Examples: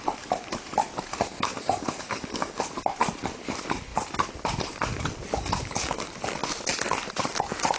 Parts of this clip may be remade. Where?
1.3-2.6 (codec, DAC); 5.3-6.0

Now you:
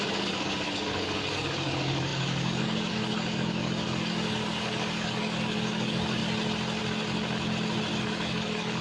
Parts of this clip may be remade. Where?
0.0-6.2 (codec, DAC); 8.0-8.8

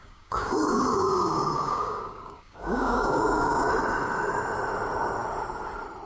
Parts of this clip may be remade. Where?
0.0-3.7 (codec, DAC)

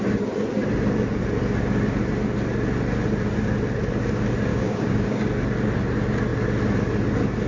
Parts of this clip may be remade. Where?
4.5-5.2 (codec, DAC)

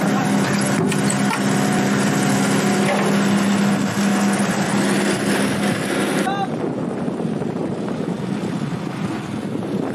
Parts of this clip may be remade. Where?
none

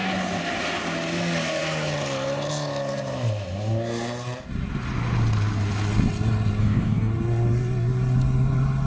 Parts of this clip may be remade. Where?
6.6-7.1 (codec, DAC)

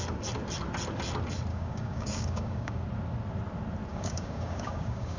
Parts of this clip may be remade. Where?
1.5-2.8 (codec, DAC); 3.9-5.2